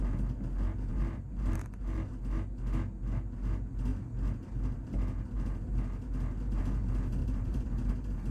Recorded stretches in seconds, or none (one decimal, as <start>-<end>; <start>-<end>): 0.0-0.9; 2.1-7.2; 7.7-8.3